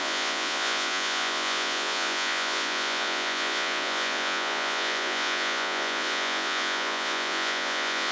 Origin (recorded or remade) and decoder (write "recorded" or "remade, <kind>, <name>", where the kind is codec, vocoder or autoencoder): remade, vocoder, Vocos